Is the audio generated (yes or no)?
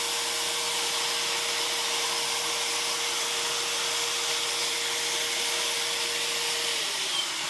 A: no